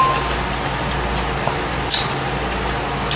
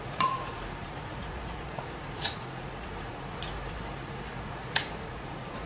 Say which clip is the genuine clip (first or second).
first